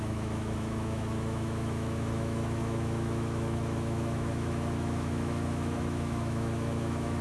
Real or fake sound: fake